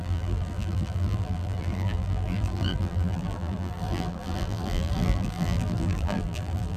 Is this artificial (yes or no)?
yes